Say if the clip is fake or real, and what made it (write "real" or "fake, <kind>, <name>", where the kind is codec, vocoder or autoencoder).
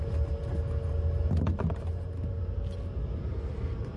real